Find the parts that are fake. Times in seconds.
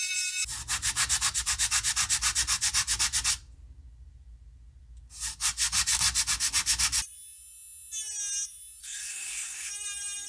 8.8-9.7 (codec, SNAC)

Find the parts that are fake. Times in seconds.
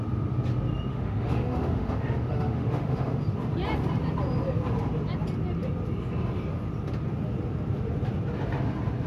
0.9-3.2 (autoencoder, DAC-VAE)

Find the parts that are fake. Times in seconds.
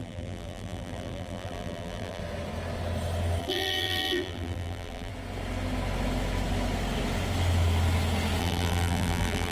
0.0-2.2 (vocoder, BigVGAN v2); 3.4-5.1; 8.4-9.5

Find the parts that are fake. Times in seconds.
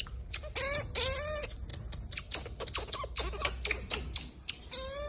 none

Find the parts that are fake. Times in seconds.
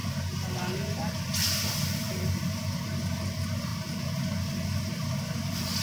none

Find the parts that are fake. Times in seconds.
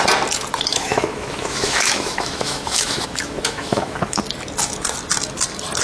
0.7-4.2 (autoencoder, DAC-VAE)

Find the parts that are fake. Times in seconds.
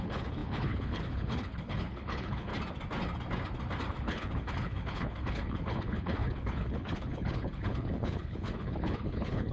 0.0-2.5 (codec, HILCodec); 3.9-9.5